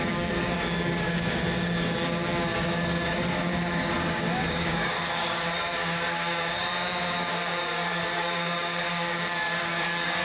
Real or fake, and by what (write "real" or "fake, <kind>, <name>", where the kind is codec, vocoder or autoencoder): fake, codec, DAC